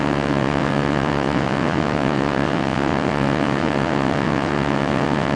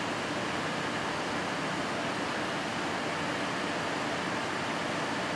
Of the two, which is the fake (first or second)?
first